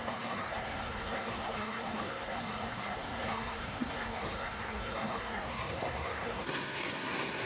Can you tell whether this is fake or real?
fake